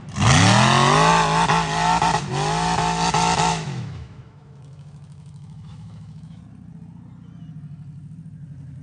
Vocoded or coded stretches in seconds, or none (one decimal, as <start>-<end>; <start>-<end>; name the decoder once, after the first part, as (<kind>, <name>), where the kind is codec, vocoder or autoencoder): 3.5-6.4 (autoencoder, DAC-VAE)